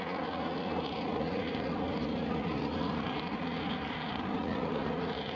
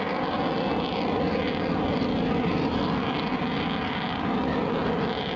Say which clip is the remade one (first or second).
first